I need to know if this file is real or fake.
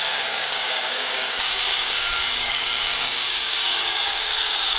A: fake